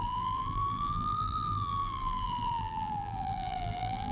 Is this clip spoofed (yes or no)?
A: yes